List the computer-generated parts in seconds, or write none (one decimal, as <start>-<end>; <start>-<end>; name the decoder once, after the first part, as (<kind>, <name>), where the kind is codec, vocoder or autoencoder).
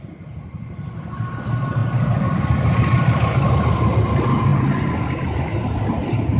none